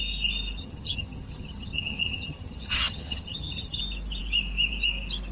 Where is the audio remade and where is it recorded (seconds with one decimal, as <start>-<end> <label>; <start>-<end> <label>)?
0.0-0.6 recorded; 0.6-3.8 remade; 3.8-5.3 recorded